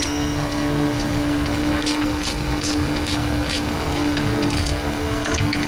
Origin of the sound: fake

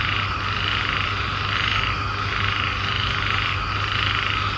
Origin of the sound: real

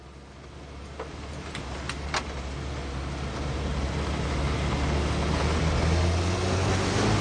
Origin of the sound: real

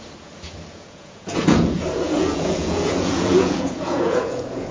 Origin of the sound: fake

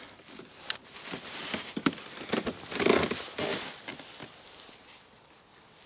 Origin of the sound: real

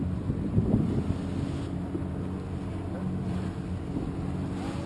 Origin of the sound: real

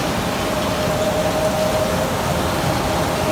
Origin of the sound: real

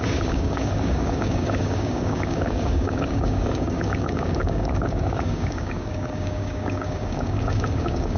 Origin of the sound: fake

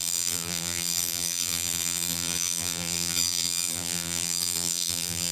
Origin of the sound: fake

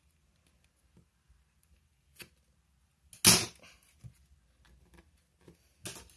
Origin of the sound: real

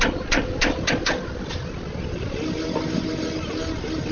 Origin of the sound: real